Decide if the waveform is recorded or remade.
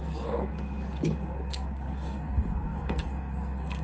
remade